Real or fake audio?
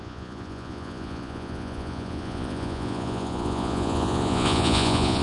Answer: fake